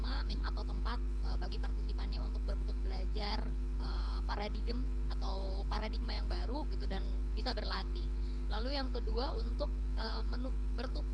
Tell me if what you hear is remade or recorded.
remade